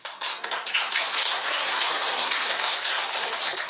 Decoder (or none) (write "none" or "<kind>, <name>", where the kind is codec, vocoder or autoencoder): codec, SNAC